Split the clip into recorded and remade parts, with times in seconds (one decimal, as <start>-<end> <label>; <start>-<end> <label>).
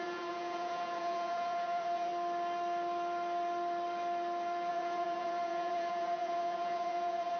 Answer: 0.0-2.1 remade; 2.1-4.7 recorded; 4.7-7.4 remade